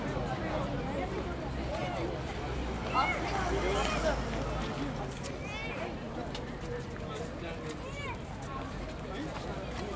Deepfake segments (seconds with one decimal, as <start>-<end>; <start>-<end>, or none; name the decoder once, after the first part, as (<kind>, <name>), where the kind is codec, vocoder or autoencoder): none